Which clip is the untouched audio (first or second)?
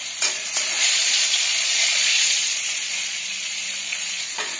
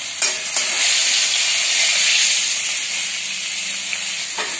second